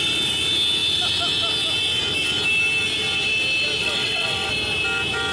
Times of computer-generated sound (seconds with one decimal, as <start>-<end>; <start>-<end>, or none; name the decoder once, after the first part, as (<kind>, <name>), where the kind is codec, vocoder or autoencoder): 3.8-4.5 (vocoder, WaveNeXt)